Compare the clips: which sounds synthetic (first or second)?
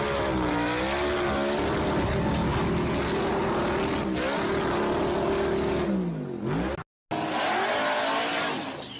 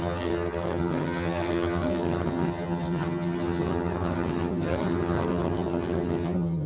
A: second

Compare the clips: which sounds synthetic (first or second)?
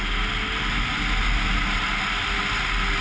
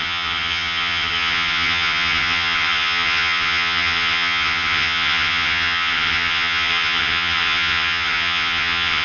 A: second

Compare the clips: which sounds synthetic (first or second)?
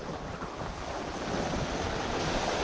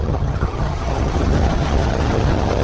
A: second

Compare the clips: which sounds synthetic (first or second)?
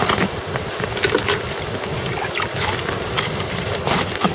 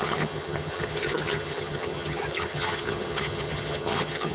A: second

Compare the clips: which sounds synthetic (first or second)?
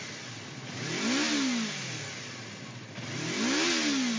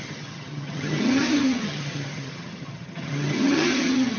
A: second